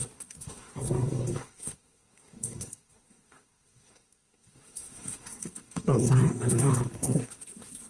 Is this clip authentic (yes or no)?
no